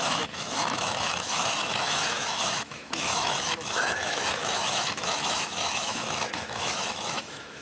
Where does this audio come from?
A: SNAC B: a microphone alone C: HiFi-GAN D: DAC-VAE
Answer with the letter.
D